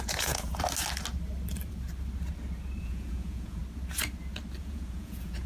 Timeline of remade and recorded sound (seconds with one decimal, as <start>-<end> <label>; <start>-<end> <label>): 0.0-0.5 remade; 0.5-2.8 recorded; 2.8-3.6 remade; 3.6-4.6 recorded; 4.6-5.5 remade